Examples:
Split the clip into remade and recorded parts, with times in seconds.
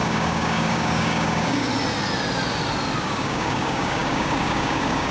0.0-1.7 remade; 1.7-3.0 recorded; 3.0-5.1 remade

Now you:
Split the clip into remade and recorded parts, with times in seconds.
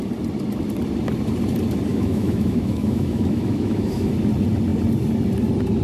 0.0-1.9 recorded; 1.9-4.1 remade; 4.1-5.8 recorded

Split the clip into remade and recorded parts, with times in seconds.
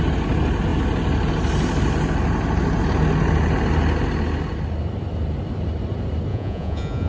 0.0-6.3 recorded; 6.3-7.1 remade